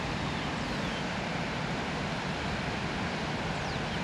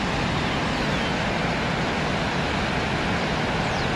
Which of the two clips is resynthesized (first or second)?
first